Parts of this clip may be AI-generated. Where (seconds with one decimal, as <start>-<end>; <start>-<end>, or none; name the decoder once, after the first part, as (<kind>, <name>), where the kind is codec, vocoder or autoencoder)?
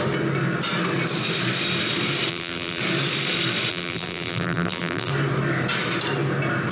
2.3-2.8 (vocoder, BigVGAN v2); 3.7-5.1